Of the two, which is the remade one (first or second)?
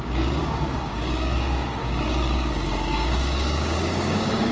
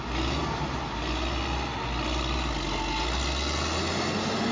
first